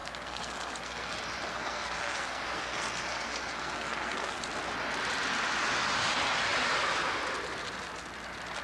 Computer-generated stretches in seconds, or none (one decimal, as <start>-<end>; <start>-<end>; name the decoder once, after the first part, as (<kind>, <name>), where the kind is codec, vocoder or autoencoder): 0.0-1.1 (codec, SNAC); 1.5-4.4